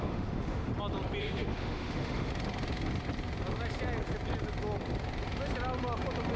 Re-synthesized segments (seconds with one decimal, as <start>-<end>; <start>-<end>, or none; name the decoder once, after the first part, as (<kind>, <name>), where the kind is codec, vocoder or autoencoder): 0.0-0.7 (autoencoder, DAC-VAE); 1.2-2.3